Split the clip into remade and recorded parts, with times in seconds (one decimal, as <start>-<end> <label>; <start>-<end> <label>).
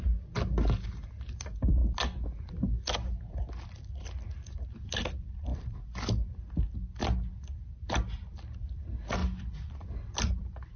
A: 0.0-10.8 recorded